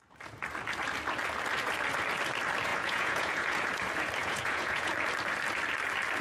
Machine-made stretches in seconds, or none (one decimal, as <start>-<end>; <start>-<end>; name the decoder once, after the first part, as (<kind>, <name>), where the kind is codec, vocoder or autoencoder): 2.7-3.7 (vocoder, Vocos); 4.2-4.9